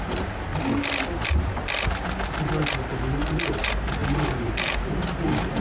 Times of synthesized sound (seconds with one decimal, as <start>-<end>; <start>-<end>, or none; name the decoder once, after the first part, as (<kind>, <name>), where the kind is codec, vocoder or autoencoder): 0.0-0.5 (vocoder, BigVGAN v2); 1.1-1.6; 2.9-5.6